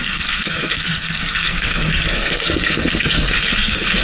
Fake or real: fake